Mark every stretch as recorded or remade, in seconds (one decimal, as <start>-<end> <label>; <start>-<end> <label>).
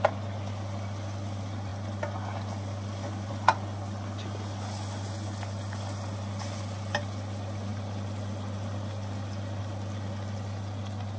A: 0.0-11.2 recorded